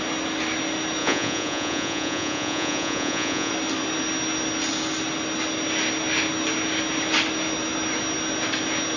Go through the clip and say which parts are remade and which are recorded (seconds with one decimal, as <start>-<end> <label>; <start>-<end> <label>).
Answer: 0.0-1.0 recorded; 1.0-3.5 remade; 3.5-9.0 recorded